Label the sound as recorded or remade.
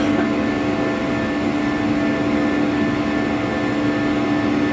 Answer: recorded